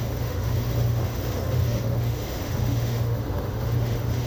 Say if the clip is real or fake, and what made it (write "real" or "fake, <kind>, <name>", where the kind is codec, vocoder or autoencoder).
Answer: fake, autoencoder, DAC-VAE